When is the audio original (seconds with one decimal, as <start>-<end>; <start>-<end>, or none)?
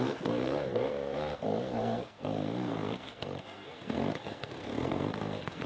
none